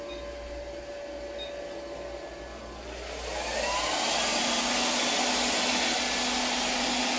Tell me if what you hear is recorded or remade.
recorded